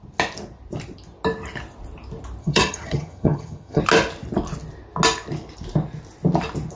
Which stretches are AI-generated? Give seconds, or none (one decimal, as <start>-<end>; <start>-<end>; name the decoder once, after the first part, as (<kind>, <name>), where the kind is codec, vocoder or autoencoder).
2.4-3.8 (vocoder, HiFi-GAN)